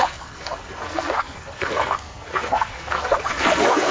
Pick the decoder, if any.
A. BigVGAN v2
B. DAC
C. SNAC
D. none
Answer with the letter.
C